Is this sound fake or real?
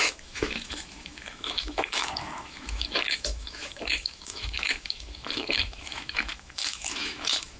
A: fake